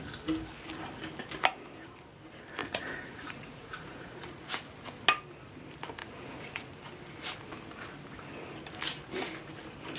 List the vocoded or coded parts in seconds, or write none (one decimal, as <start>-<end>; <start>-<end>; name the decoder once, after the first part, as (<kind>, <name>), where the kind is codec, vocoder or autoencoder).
2.6-4.5 (vocoder, Vocos); 6.0-6.7